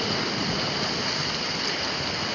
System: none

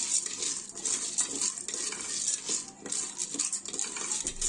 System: none